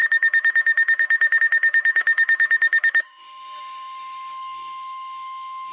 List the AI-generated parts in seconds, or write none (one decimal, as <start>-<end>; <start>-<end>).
0.0-5.7